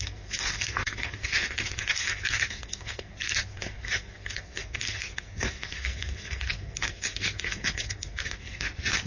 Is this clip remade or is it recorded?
remade